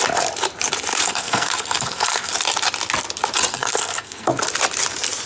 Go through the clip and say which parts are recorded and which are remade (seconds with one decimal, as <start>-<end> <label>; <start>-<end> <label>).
0.0-1.0 recorded; 1.0-2.3 remade; 2.3-3.5 recorded; 3.5-4.4 remade; 4.4-5.3 recorded